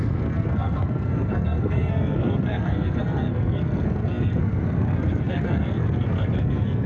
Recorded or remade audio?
remade